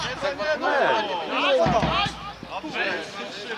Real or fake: real